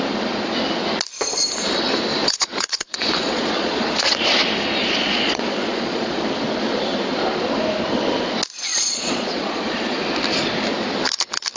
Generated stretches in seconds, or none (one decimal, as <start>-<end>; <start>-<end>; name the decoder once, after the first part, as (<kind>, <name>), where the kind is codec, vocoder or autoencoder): 2.1-4.1 (vocoder, Vocos); 4.8-6.2; 8.7-10.0